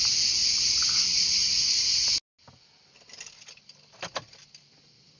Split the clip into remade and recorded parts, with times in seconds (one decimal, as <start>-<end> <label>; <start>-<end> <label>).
0.0-5.2 recorded